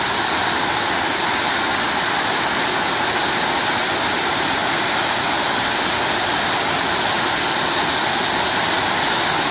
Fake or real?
real